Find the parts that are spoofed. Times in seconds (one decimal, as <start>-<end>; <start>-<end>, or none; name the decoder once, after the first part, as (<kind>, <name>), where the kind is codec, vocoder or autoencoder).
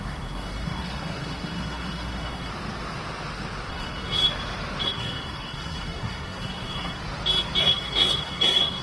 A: 0.0-2.5 (codec, SNAC); 3.7-4.2; 4.8-7.0; 7.6-8.8